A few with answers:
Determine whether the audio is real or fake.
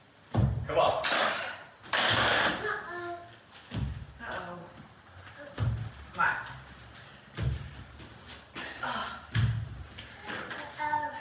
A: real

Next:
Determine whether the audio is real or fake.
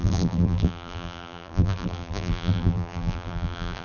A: fake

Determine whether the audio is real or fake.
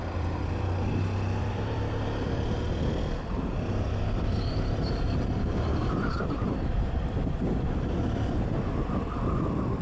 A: fake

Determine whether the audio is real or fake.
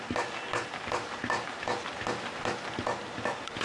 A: real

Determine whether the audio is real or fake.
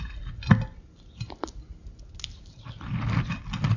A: real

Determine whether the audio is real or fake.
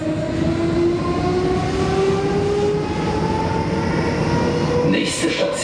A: real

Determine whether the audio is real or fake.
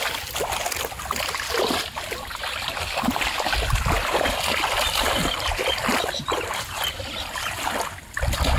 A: real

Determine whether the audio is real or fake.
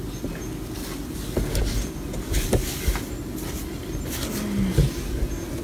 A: real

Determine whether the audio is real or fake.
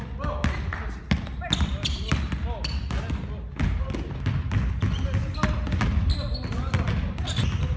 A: real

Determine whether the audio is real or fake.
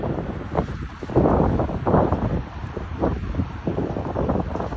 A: fake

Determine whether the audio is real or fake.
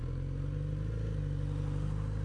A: real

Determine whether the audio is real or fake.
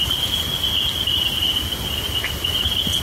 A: real